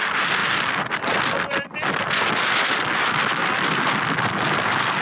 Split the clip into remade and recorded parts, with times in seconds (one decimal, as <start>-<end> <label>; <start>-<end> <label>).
0.0-5.0 recorded